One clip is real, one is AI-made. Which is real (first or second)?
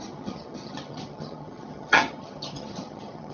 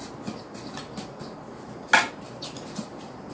second